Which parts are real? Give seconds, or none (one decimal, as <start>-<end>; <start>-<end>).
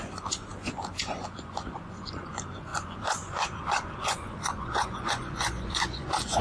none